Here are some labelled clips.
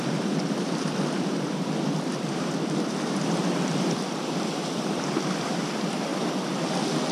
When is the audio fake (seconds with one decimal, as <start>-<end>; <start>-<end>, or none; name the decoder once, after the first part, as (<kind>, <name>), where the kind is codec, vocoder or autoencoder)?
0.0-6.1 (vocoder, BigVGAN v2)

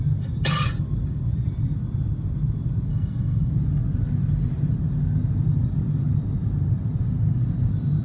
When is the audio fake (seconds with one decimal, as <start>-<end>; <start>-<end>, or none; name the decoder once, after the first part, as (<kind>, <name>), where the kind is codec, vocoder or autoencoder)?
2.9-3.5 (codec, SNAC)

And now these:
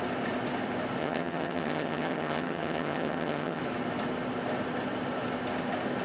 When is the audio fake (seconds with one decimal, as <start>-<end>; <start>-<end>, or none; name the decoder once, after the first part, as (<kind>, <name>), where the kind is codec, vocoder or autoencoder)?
1.0-3.6 (vocoder, HiFi-GAN)

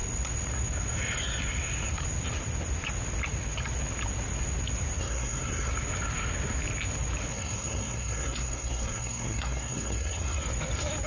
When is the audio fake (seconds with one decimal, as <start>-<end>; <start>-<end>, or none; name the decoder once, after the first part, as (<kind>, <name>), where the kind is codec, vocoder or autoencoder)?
5.0-5.7 (codec, SNAC); 7.3-10.4